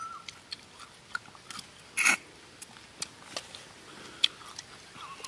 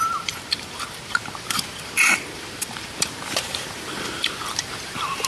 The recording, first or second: first